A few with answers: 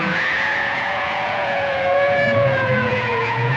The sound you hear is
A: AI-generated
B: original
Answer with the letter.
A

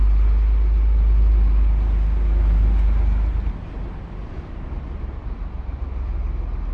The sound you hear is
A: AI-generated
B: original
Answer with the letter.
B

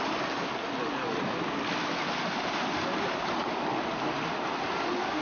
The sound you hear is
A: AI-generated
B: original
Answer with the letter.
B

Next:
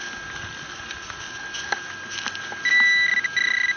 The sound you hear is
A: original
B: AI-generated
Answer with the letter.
A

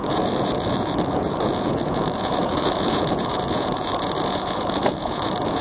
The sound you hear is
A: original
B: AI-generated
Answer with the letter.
B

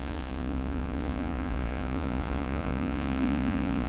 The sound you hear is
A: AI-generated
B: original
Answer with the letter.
A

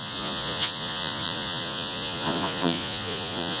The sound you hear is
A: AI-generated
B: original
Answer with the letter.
A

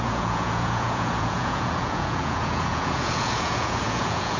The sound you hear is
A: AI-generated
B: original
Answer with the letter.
A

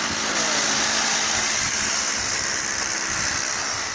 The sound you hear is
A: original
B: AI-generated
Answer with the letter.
A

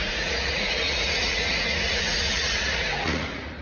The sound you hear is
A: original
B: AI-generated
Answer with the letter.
B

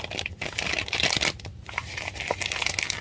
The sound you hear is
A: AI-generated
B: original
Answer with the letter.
B